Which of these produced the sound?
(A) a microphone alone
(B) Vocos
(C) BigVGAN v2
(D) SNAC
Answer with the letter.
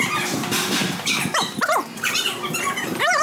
C